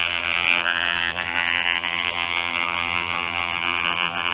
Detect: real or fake fake